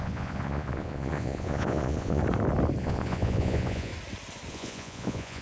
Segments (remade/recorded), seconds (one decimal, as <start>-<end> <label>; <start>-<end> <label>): 0.0-2.2 remade; 2.2-2.8 recorded; 2.8-3.9 remade; 3.9-4.5 recorded; 4.5-5.4 remade